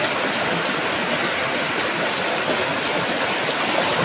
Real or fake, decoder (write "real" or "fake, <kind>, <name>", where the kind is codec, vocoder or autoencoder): real